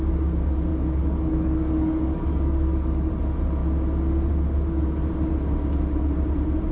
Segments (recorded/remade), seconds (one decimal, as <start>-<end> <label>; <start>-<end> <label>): 0.0-0.7 recorded; 0.7-3.1 remade; 3.1-6.7 recorded